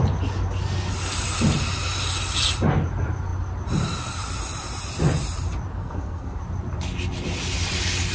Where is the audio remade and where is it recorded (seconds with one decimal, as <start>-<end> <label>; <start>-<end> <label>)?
0.0-5.8 recorded; 5.8-6.4 remade; 6.4-8.1 recorded